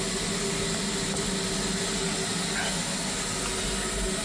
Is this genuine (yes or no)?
yes